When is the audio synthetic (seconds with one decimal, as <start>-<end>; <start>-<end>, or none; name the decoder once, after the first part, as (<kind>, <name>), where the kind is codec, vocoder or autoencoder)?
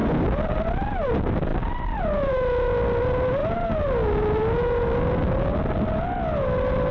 none